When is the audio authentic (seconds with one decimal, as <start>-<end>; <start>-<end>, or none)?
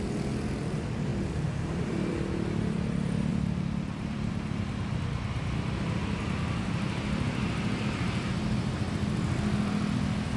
0.0-1.1; 2.1-3.3; 4.3-10.4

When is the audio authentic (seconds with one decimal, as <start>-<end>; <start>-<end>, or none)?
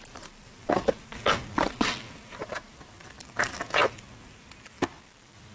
0.0-5.5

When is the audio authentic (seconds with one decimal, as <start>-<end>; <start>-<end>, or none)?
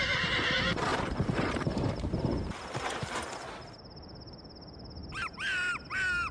0.0-0.9; 3.2-6.3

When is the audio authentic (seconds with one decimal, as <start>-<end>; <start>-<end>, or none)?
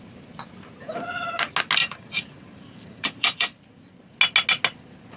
0.0-1.8; 3.6-5.2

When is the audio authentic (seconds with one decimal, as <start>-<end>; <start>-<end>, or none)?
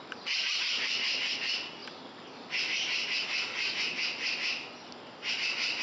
0.0-5.8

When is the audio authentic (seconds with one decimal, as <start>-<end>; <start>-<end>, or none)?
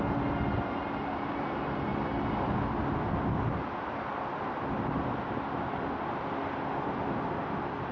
0.0-7.9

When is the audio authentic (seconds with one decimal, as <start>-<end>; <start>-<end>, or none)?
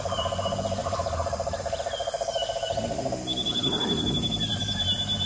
0.0-0.8; 1.6-2.0; 4.6-5.3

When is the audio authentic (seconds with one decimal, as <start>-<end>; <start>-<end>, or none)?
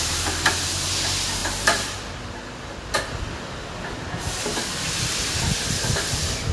0.0-1.4; 2.3-6.5